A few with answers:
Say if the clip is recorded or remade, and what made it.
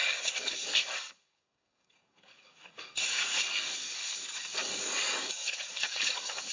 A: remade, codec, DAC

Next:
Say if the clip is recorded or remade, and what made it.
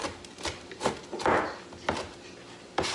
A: recorded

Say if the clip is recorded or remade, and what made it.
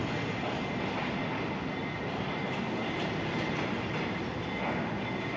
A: recorded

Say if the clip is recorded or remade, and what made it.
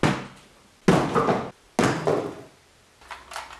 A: recorded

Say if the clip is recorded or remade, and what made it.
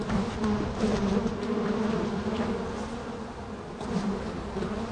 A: recorded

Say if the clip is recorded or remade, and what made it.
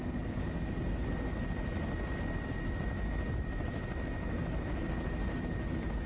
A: recorded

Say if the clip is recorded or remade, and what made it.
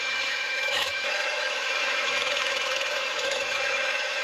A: remade, autoencoder, DAC-VAE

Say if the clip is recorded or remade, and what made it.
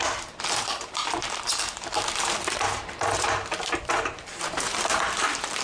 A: remade, vocoder, BigVGAN v2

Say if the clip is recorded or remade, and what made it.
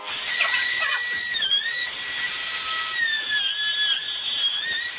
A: recorded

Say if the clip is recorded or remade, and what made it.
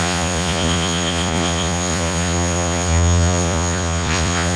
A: remade, vocoder, Vocos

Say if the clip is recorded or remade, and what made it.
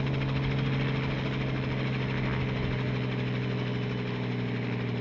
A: recorded